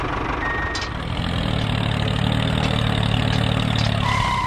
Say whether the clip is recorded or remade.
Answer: recorded